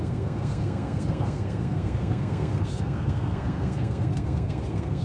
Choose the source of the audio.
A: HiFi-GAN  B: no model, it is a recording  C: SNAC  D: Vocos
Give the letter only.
C